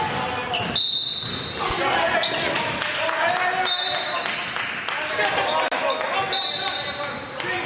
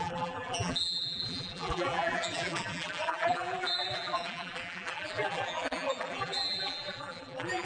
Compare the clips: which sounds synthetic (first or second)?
second